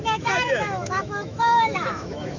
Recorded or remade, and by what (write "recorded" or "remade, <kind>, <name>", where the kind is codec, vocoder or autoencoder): remade, autoencoder, DAC-VAE